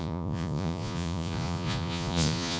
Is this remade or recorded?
remade